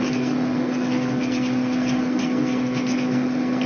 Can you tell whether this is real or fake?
fake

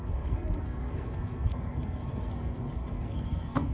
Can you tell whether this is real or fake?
fake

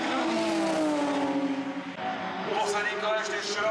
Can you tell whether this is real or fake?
real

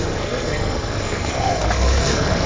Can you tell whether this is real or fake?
fake